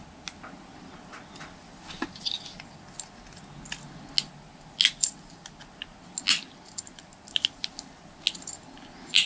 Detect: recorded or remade recorded